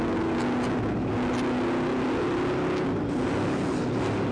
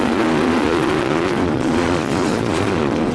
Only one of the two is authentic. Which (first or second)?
first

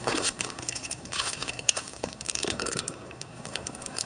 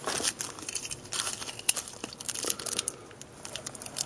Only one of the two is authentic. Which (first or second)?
second